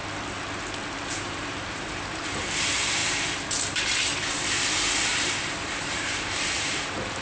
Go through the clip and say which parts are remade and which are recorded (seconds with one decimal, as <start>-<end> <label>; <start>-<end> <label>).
0.0-0.9 recorded; 0.9-3.0 remade; 3.0-5.4 recorded; 5.4-7.2 remade